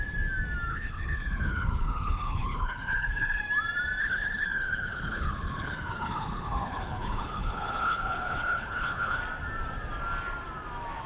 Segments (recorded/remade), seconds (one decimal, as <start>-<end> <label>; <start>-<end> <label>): 0.0-0.7 recorded; 0.7-3.4 remade; 3.4-4.0 recorded; 4.0-9.2 remade; 9.2-11.1 recorded